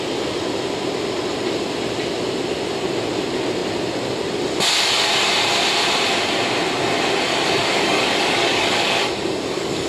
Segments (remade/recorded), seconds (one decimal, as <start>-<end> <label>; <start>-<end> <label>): 0.0-7.3 recorded; 7.3-9.9 remade

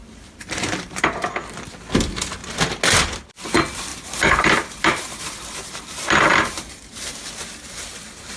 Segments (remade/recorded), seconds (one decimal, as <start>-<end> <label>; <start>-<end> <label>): 0.0-1.3 remade; 1.3-3.9 recorded; 3.9-7.1 remade; 7.1-8.4 recorded